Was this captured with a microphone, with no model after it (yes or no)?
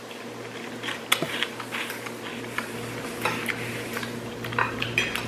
yes